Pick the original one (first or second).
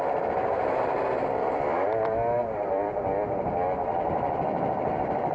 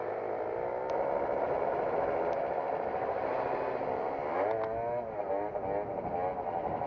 second